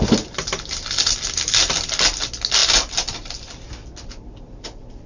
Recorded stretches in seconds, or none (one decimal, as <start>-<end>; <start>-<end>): 0.0-2.6; 3.5-5.1